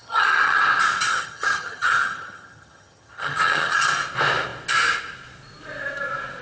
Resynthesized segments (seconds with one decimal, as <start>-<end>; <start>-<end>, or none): 0.0-0.6; 1.1-3.9